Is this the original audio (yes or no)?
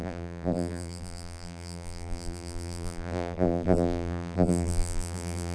no